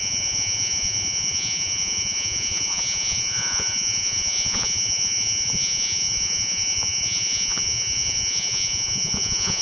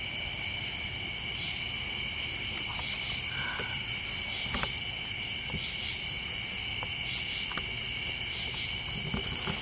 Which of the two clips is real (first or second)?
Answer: second